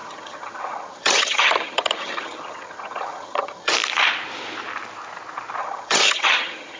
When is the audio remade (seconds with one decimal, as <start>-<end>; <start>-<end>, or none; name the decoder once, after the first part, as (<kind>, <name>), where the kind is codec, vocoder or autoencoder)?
0.0-3.7 (vocoder, HiFi-GAN); 5.6-6.8